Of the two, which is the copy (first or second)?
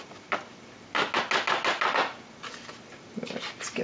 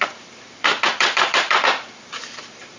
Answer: second